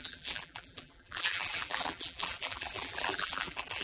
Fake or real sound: fake